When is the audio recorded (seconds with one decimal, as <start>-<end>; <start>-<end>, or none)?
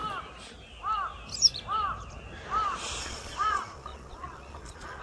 0.0-3.0